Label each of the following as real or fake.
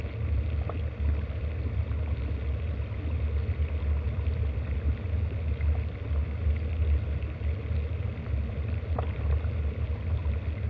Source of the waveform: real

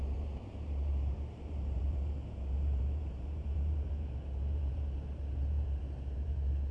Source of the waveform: fake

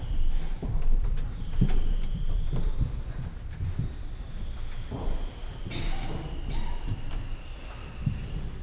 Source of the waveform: fake